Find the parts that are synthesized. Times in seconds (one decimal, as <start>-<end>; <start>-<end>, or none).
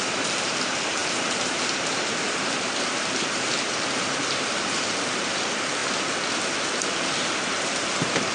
0.0-5.8; 6.6-8.3